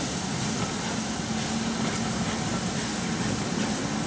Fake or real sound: real